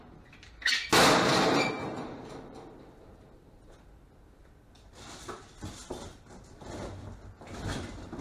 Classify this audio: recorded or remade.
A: recorded